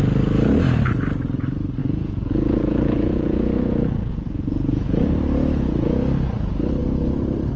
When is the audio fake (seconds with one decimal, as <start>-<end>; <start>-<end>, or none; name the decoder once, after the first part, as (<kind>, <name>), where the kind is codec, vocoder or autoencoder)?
1.8-5.1 (vocoder, Vocos)